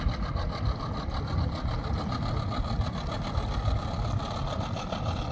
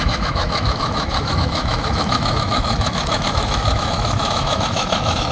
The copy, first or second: second